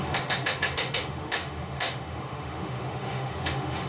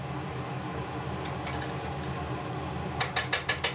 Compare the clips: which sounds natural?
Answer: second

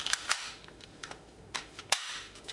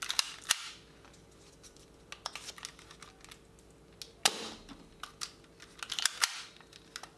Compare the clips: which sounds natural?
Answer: second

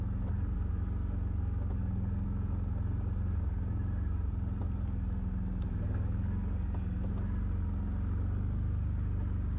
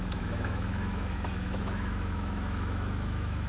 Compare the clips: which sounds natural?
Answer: first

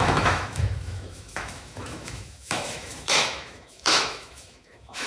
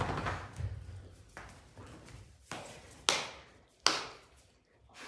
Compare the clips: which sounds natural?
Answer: second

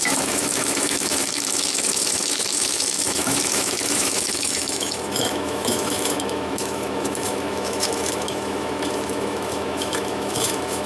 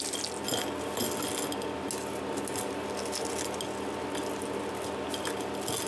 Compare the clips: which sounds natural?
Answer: second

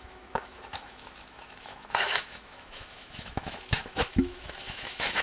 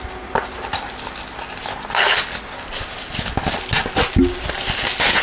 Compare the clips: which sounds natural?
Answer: second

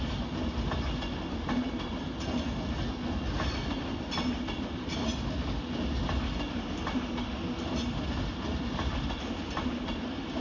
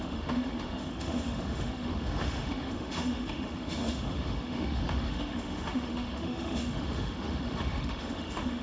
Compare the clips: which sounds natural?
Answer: first